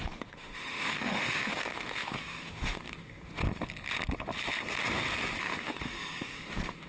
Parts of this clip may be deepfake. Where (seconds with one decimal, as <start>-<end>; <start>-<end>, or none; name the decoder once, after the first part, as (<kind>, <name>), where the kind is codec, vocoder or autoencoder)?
0.0-3.4 (autoencoder, DAC-VAE); 5.4-6.9